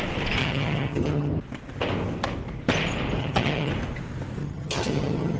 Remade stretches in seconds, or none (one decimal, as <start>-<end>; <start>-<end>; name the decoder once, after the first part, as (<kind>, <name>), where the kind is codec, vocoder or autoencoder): 0.4-1.3 (vocoder, HiFi-GAN); 3.2-3.7; 4.4-5.4